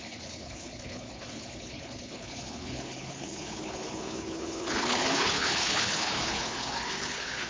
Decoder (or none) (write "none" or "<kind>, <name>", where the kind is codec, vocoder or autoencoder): codec, HILCodec